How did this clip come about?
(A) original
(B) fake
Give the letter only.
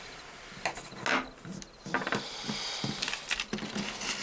A